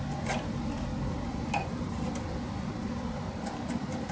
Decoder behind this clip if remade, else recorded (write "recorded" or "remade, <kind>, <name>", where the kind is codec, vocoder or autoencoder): remade, vocoder, BigVGAN v2